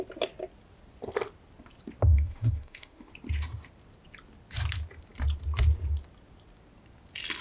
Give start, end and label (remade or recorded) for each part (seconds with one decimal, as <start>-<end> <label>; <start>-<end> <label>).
0.0-2.1 recorded; 2.1-3.1 remade; 3.1-7.4 recorded